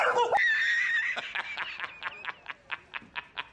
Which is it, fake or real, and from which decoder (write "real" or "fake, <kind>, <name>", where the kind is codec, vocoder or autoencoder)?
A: real